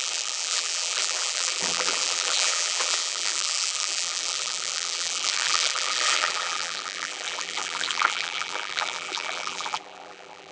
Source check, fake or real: fake